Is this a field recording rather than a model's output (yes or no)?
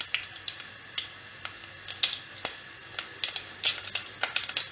yes